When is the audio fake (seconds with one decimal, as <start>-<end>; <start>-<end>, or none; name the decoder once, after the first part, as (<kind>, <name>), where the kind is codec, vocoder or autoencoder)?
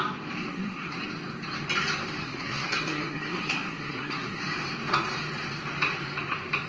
0.5-1.0 (codec, SNAC); 2.2-4.4